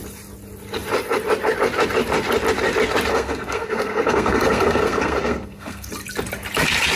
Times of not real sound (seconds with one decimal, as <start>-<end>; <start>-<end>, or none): 3.1-5.9